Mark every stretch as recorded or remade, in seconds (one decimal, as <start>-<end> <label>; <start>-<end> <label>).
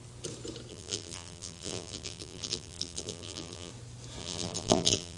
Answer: 0.0-0.7 recorded; 0.7-3.7 remade; 3.7-4.2 recorded; 4.2-5.2 remade